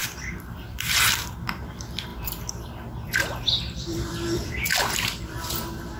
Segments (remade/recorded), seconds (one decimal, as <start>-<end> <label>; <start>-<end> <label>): 0.0-1.6 remade; 1.6-2.1 recorded; 2.1-6.0 remade

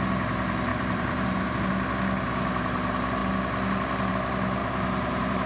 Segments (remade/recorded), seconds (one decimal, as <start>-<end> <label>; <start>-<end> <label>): 0.0-0.7 recorded; 0.7-1.7 remade; 1.7-4.6 recorded; 4.6-5.5 remade

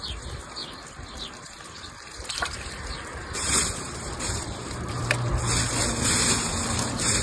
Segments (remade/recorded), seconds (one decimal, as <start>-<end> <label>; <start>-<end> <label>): 0.0-5.3 remade; 5.3-5.9 recorded; 5.9-7.2 remade

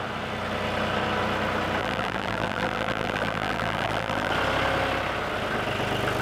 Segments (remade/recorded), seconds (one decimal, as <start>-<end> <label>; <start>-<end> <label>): 0.0-1.8 recorded; 1.8-4.3 remade; 4.3-6.2 recorded

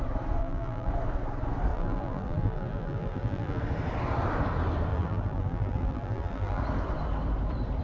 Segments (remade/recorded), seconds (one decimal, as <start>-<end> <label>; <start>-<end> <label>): 0.0-0.4 recorded; 0.4-0.9 remade; 0.9-1.7 recorded; 1.7-3.6 remade; 3.6-4.9 recorded; 4.9-6.6 remade; 6.6-7.8 recorded

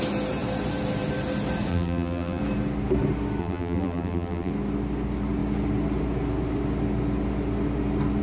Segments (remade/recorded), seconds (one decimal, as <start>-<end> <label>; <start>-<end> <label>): 0.0-1.7 recorded; 1.7-2.4 remade; 2.4-3.4 recorded; 3.4-4.5 remade; 4.5-8.2 recorded

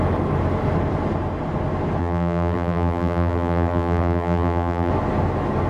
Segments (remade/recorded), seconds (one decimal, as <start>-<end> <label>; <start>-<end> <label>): 0.0-2.0 recorded; 2.0-4.9 remade; 4.9-5.7 recorded